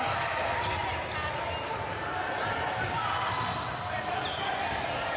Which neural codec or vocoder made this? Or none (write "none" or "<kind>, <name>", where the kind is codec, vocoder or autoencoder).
none